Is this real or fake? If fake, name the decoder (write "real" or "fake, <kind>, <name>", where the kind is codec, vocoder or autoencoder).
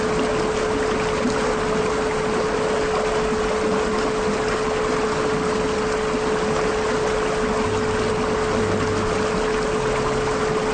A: real